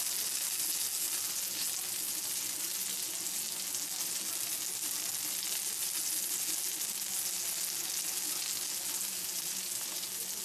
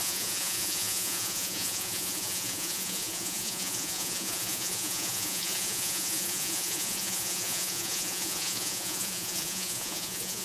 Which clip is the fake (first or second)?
second